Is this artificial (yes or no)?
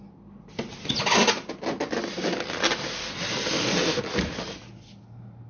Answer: no